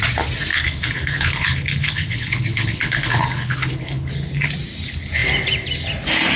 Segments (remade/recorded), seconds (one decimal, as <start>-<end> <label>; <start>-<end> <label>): 0.0-0.5 recorded; 0.5-4.1 remade; 4.1-6.4 recorded